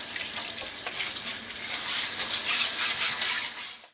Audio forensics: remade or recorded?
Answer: recorded